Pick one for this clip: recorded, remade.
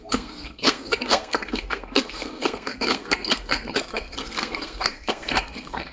remade